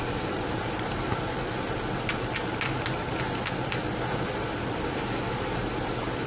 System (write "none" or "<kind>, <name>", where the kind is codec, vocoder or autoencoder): none